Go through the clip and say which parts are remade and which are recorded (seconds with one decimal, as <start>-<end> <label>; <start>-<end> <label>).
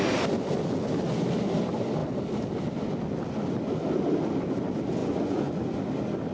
0.0-5.0 recorded; 5.0-5.5 remade; 5.5-6.3 recorded